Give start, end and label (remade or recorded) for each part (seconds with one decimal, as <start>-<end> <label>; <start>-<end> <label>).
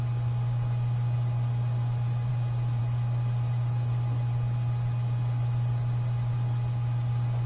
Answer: 0.0-7.5 recorded